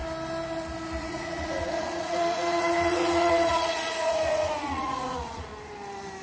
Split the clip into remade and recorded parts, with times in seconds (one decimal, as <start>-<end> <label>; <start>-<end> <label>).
0.0-1.0 recorded; 1.0-5.5 remade; 5.5-6.2 recorded